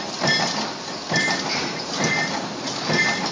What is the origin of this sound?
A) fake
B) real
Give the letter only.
B